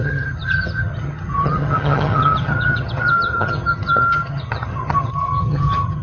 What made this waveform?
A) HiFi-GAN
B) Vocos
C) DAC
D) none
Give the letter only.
A